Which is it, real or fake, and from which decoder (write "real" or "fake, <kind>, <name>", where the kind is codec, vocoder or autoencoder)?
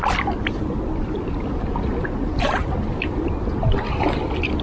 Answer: real